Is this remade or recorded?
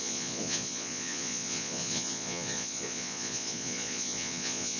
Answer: remade